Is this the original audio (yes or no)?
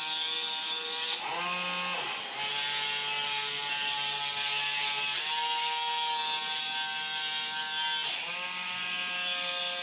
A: yes